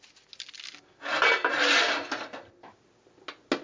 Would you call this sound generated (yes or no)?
no